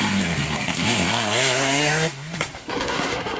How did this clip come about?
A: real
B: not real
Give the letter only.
B